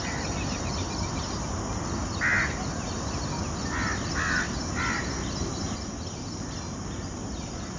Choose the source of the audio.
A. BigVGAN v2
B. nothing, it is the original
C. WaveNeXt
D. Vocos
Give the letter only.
B